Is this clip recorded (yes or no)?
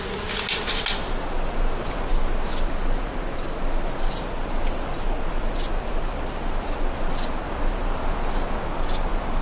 yes